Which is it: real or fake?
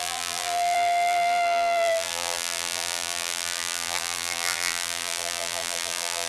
fake